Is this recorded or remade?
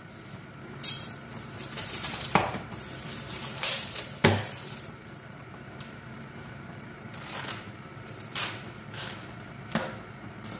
remade